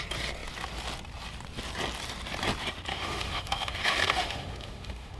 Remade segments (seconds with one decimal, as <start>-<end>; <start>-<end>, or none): 2.9-5.2